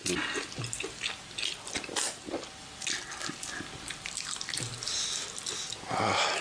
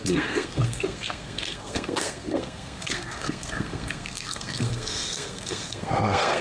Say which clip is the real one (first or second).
first